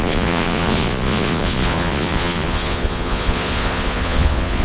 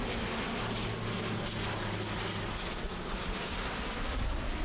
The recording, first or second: second